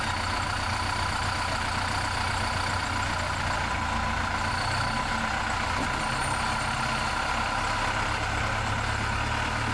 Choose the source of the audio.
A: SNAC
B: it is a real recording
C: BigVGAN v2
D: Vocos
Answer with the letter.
B